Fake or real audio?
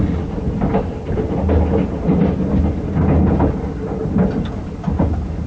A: real